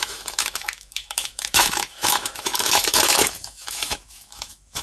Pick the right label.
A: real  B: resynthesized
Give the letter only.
B